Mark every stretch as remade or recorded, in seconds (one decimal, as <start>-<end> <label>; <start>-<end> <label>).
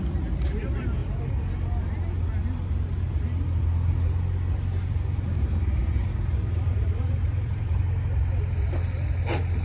0.0-5.8 recorded; 5.8-7.8 remade; 7.8-9.6 recorded